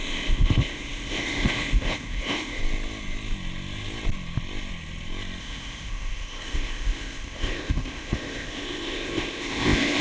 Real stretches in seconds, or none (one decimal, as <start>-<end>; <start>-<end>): 2.6-5.4